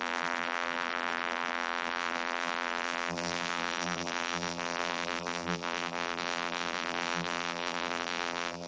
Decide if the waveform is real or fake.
fake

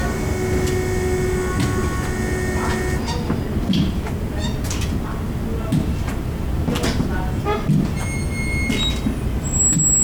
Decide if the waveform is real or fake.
real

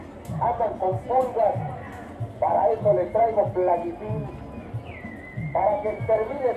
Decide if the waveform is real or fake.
real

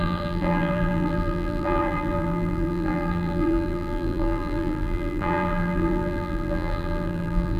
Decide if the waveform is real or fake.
fake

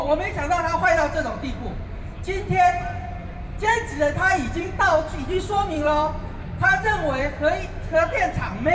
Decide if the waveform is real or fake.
fake